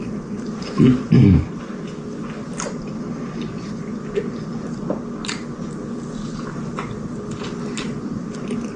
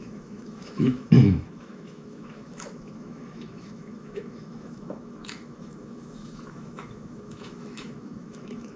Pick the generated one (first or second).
second